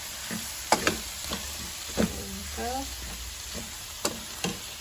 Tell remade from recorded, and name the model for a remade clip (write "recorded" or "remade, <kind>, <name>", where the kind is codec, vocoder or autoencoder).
remade, vocoder, BigVGAN v2